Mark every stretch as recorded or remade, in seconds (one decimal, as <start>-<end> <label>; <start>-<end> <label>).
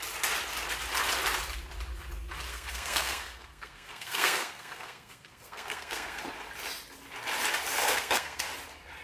0.0-2.5 recorded; 2.5-6.2 remade; 6.2-7.8 recorded; 7.8-8.4 remade; 8.4-9.0 recorded